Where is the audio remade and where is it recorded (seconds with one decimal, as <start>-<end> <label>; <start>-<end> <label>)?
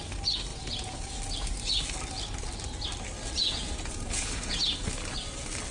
0.0-0.5 recorded; 0.5-1.1 remade; 1.1-3.4 recorded; 3.4-4.8 remade; 4.8-5.7 recorded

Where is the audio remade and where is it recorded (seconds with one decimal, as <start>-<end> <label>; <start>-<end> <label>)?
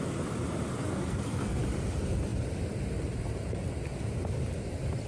0.0-0.8 recorded; 0.8-1.6 remade; 1.6-5.1 recorded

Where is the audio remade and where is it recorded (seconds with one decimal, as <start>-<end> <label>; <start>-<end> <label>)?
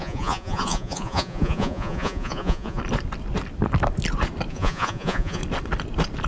0.0-2.8 remade; 2.8-4.5 recorded; 4.5-5.4 remade; 5.4-6.3 recorded